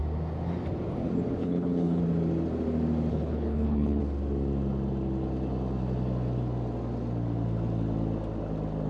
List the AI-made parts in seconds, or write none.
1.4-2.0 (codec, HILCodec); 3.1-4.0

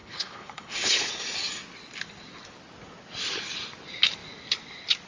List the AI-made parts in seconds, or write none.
0.0-1.1 (codec, HILCodec)

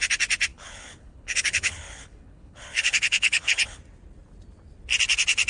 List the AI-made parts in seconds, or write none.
0.5-3.8 (codec, HILCodec)

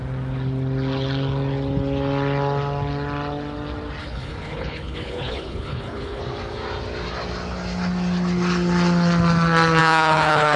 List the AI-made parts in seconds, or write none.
4.0-6.2 (codec, HILCodec); 9.8-10.6

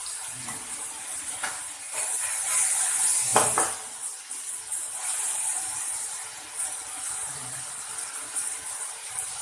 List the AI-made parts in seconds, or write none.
none

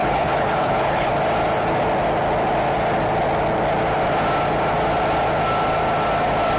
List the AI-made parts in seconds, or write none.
0.0-1.1 (codec, HILCodec)

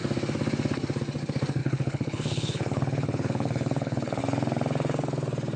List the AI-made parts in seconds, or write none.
1.6-4.2 (codec, HILCodec)

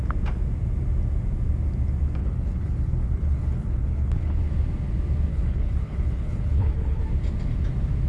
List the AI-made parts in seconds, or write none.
2.2-4.4 (codec, HILCodec); 5.3-7.0